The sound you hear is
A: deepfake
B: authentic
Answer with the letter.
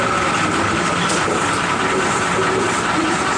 A